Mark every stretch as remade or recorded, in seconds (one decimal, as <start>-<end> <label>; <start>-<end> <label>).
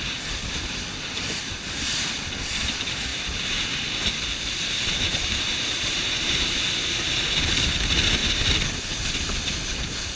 0.0-8.2 remade; 8.2-8.7 recorded; 8.7-10.2 remade